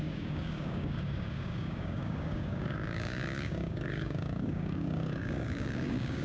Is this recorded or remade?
remade